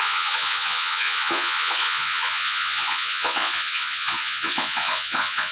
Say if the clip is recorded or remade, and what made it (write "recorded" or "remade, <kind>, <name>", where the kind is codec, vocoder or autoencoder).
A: remade, vocoder, Vocos